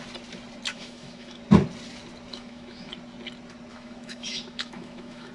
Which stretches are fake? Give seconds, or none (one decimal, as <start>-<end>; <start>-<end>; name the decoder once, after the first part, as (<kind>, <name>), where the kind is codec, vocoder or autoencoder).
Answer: 0.7-1.4 (autoencoder, DAC-VAE); 2.3-2.9; 3.7-5.3